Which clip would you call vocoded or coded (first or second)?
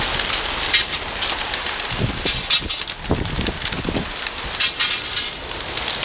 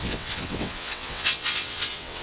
second